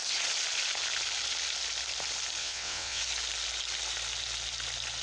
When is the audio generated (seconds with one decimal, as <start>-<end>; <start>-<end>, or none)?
2.4-3.0